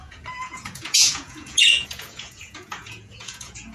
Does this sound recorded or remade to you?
remade